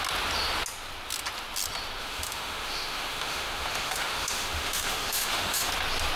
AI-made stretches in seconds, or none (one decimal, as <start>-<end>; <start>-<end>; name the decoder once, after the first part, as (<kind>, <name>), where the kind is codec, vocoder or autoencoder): 2.0-5.7 (autoencoder, DAC-VAE)